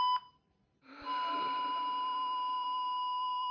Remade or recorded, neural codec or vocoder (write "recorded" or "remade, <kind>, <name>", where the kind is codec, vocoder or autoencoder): remade, vocoder, BigVGAN v2